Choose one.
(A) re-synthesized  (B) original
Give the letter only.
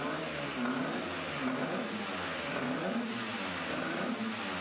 B